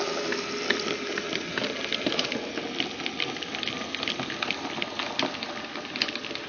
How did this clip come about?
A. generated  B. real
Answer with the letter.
B